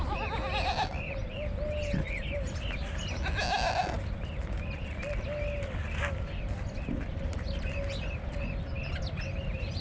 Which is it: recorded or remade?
recorded